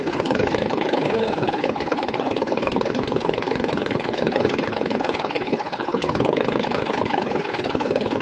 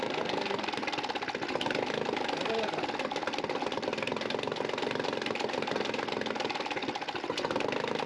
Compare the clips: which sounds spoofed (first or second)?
first